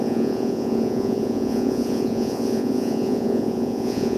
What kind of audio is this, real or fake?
fake